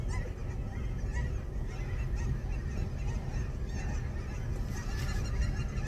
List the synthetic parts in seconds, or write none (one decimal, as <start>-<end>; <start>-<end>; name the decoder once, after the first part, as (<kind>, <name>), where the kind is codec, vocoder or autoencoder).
none